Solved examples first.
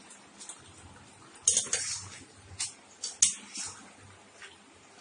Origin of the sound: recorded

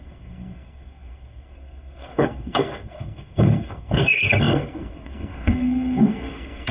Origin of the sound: remade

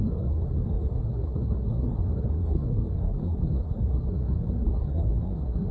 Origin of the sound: remade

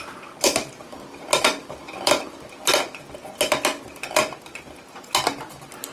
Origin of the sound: recorded